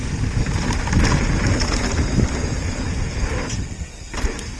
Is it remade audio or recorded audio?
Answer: recorded